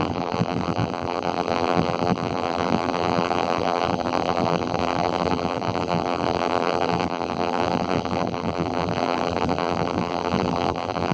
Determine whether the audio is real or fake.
fake